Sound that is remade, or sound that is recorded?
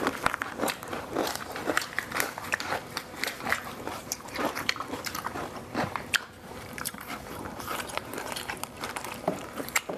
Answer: remade